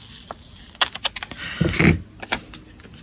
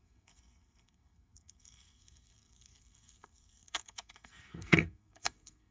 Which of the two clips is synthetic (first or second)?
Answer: second